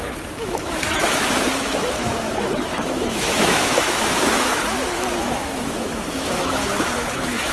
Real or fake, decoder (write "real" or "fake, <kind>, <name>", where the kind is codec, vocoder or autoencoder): fake, autoencoder, DAC-VAE